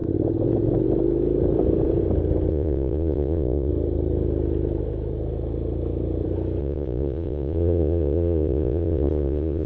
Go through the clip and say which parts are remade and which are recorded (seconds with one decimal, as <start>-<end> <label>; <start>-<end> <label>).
0.0-2.5 recorded; 2.5-3.7 remade; 3.7-6.6 recorded; 6.6-9.7 remade